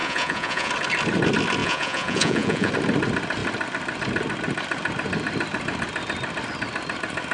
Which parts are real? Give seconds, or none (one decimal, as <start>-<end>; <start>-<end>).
0.7-1.6; 2.7-7.3